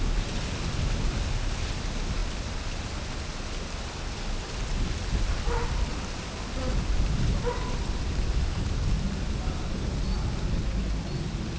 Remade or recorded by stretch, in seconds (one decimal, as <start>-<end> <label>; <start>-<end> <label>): 0.0-11.6 recorded